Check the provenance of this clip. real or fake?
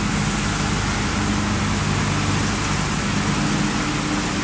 real